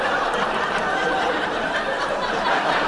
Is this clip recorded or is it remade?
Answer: remade